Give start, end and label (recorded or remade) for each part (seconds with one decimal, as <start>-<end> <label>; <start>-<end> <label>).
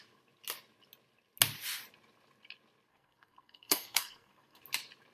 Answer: 0.0-2.9 recorded; 2.9-4.6 remade; 4.6-5.1 recorded